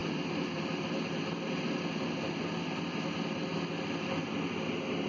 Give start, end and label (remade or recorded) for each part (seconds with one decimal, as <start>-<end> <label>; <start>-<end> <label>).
0.0-5.1 recorded

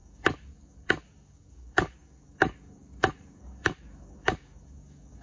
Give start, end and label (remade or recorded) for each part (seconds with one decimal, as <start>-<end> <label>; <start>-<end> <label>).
0.0-5.2 remade

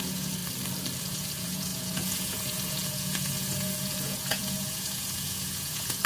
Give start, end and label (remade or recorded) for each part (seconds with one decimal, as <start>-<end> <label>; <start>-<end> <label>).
0.0-0.4 remade; 0.4-1.0 recorded; 1.0-6.1 remade

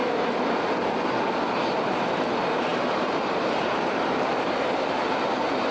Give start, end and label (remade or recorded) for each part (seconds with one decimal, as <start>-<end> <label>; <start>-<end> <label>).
0.0-2.3 recorded; 2.3-5.7 remade

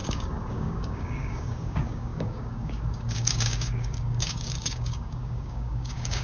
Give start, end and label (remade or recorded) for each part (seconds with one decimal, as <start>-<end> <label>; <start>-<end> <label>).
0.0-6.2 remade